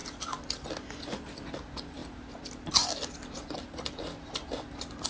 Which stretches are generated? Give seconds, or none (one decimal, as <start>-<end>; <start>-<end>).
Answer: none